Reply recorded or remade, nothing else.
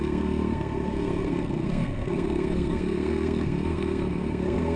remade